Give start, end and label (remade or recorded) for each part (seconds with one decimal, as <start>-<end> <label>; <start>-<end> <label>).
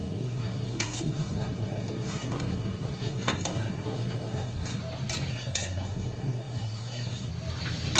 0.0-4.8 remade; 4.8-5.3 recorded; 5.3-7.3 remade; 7.3-8.0 recorded